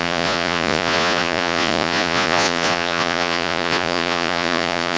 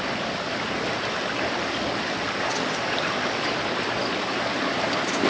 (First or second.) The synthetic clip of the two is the first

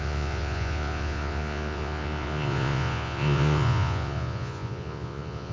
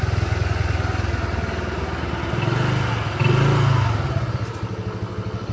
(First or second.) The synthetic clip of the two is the first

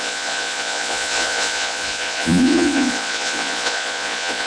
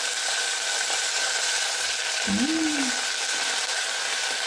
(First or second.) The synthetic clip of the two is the first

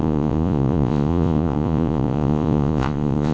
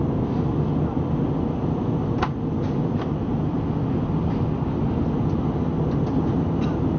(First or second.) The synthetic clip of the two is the first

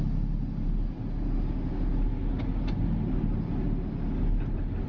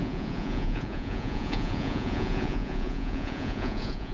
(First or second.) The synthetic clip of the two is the second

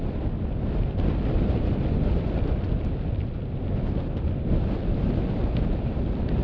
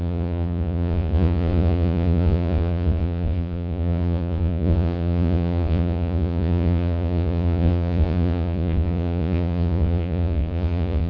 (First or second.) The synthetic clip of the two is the second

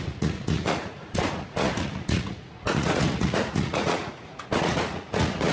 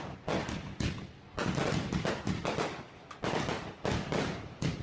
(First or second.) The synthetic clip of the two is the first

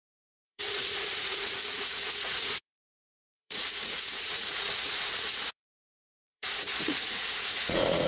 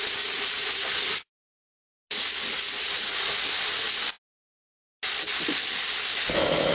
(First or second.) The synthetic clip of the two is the first